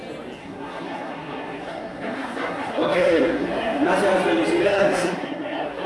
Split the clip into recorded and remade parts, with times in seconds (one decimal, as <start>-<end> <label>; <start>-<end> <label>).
0.0-0.4 recorded; 0.4-3.9 remade; 3.9-4.6 recorded; 4.6-5.9 remade